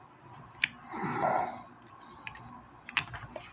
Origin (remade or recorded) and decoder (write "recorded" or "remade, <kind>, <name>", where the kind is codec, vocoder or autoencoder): recorded